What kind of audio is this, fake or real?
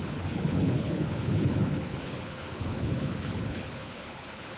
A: fake